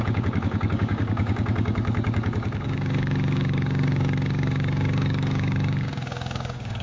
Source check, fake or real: fake